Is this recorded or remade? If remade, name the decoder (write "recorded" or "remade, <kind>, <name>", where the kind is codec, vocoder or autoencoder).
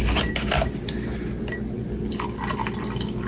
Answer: recorded